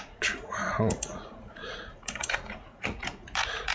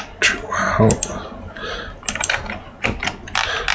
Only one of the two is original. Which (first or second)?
second